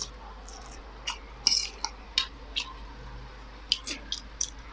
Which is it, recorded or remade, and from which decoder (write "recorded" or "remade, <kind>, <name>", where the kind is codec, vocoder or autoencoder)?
recorded